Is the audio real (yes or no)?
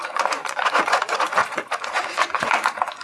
no